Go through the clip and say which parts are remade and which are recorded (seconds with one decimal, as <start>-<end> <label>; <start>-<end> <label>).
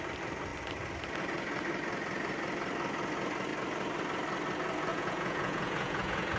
0.0-4.9 recorded; 4.9-6.4 remade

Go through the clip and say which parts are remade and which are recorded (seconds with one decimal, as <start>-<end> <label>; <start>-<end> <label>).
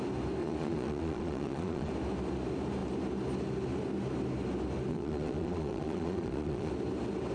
0.0-0.4 recorded; 0.4-1.9 remade; 1.9-4.9 recorded; 4.9-6.7 remade; 6.7-7.3 recorded